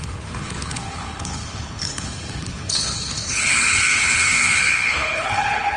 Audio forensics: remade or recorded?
remade